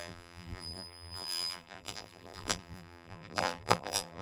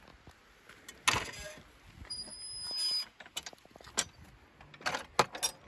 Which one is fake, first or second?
first